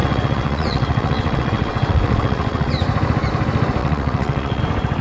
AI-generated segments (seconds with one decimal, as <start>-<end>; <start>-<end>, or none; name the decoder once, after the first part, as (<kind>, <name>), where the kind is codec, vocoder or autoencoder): 0.0-2.7 (vocoder, WaveNeXt); 3.8-4.6